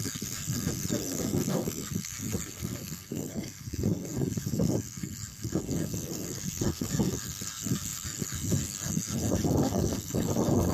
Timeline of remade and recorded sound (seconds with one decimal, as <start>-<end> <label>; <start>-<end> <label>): 0.0-10.7 remade